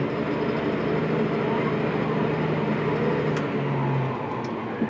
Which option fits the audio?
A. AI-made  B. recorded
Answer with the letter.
B